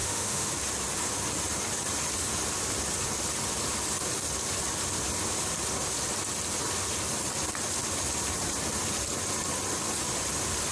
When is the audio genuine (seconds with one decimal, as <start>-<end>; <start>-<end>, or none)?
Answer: 0.5-10.7